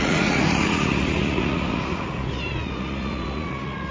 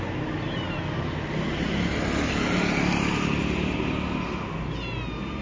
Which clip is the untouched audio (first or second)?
second